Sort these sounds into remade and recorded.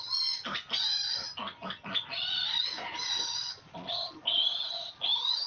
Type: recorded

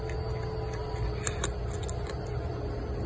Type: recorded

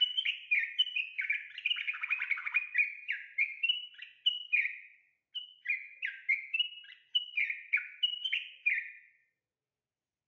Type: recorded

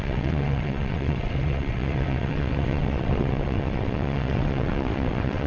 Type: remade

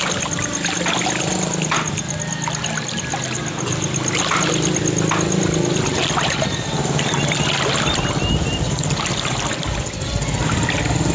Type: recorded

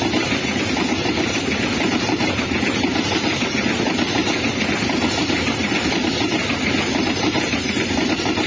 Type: recorded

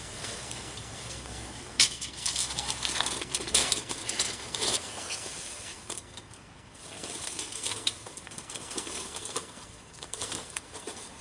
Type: remade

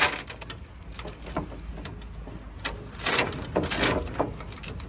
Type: recorded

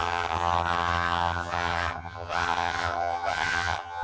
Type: remade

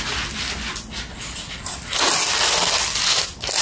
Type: recorded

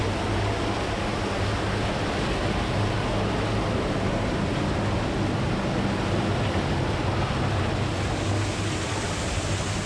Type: recorded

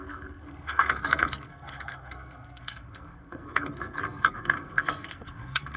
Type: remade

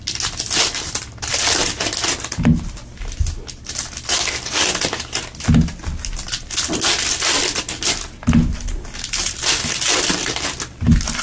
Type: recorded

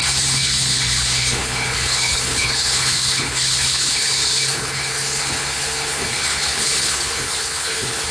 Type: remade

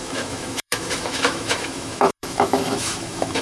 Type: remade